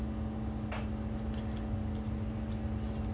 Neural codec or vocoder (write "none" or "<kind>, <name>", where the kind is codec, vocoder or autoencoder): none